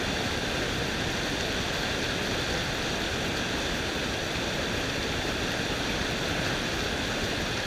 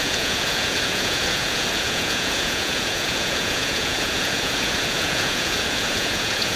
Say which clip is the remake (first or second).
second